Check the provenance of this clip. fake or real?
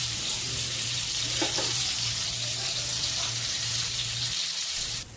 fake